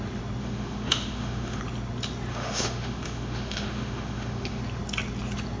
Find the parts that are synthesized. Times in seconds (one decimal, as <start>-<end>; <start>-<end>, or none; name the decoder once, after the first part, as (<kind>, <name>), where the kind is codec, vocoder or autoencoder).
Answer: 0.4-1.6 (autoencoder, DAC-VAE); 2.3-4.6